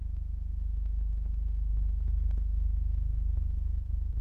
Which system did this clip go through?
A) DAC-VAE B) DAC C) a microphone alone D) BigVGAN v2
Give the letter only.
C